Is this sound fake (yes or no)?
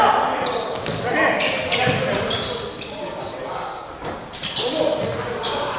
no